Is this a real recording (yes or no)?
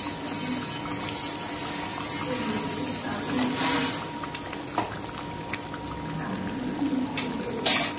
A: yes